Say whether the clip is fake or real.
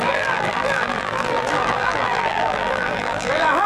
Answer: fake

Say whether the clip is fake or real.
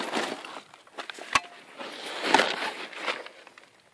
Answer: real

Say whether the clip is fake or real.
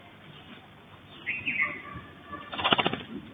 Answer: real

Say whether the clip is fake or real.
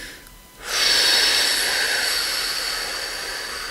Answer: real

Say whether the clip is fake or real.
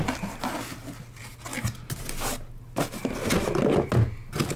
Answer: real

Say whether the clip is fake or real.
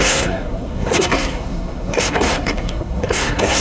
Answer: fake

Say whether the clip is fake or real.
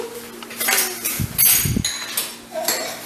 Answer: real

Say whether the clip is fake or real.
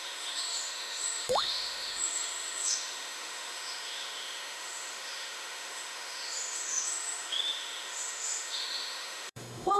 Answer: fake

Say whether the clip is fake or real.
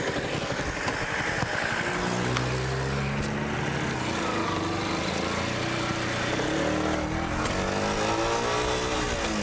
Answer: real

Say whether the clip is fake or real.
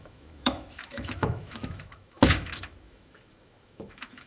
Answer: fake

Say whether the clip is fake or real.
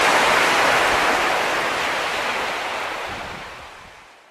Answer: real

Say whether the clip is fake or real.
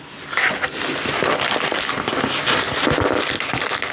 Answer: real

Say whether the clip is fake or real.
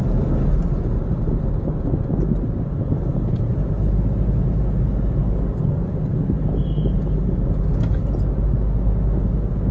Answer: real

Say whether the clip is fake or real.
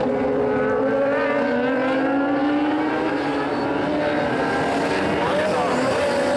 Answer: real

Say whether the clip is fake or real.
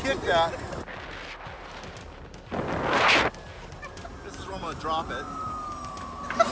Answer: real